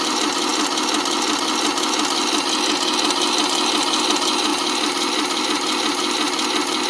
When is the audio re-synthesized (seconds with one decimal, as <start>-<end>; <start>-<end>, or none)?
none